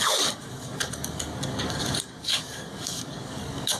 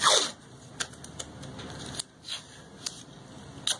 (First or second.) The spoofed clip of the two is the first